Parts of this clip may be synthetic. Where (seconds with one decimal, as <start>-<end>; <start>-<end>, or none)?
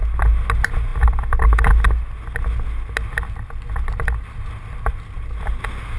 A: none